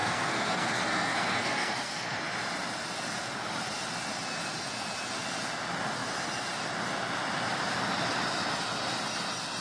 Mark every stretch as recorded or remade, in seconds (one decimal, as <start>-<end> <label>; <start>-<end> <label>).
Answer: 0.0-2.2 remade; 2.2-9.6 recorded